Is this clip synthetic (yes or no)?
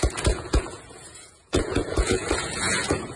yes